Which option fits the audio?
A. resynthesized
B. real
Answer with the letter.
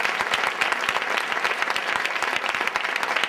A